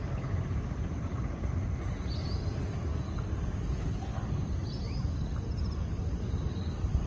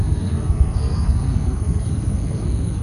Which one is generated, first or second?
second